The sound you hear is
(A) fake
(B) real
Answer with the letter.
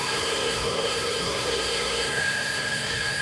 A